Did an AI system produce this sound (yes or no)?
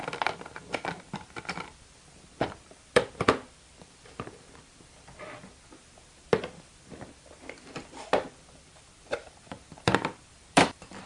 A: yes